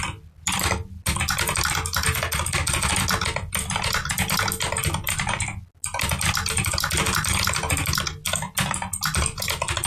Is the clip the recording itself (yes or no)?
yes